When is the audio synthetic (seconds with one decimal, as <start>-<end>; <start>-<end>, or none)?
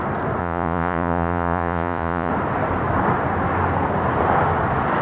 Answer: 0.4-2.3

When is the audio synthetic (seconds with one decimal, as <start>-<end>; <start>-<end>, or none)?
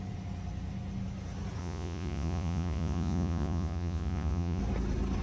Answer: 1.6-4.6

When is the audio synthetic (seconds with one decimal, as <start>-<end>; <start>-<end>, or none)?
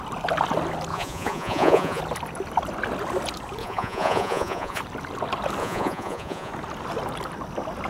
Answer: 0.9-2.0; 3.6-4.8; 5.6-6.5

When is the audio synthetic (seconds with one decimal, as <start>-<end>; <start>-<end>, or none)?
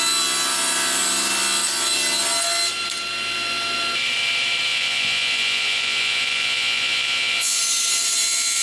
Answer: 4.7-7.6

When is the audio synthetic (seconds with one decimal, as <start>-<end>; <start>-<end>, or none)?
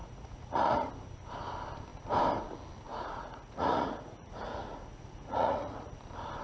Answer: 0.0-0.9; 2.9-5.9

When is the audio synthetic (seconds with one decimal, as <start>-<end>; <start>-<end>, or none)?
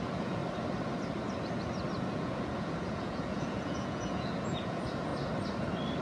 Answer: 0.0-0.4; 2.0-5.1